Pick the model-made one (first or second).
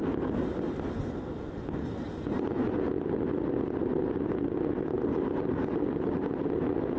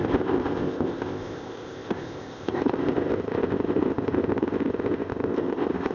second